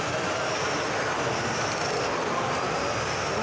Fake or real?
real